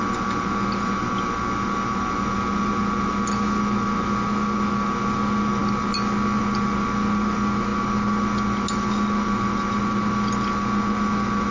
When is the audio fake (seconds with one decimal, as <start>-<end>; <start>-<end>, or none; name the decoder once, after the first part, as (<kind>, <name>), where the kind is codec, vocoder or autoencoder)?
none